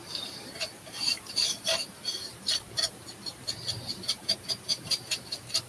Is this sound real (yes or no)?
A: no